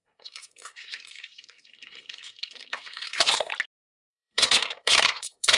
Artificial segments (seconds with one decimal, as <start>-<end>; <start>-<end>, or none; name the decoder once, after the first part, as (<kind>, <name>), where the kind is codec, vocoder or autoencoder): 0.0-3.5 (codec, SNAC); 4.1-5.6

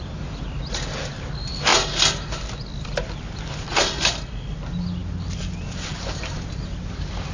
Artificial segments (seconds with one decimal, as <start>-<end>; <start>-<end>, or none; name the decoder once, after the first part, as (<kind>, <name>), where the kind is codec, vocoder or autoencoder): none

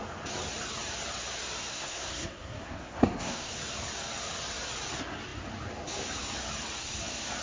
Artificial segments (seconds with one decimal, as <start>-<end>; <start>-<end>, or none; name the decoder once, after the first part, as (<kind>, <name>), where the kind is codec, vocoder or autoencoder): 1.7-3.5 (codec, SNAC)

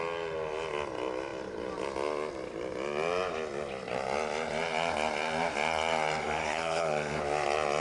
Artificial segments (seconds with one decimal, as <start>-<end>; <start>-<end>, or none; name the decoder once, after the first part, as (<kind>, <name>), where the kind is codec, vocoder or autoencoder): 6.2-7.2 (codec, SNAC)

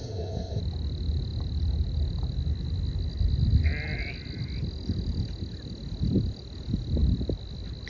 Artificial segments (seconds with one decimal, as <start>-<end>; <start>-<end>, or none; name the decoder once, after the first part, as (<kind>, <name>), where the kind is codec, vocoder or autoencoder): 0.0-0.6 (codec, SNAC)